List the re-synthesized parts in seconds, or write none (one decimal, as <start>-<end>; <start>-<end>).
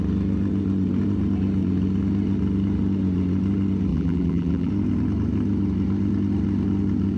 3.9-4.7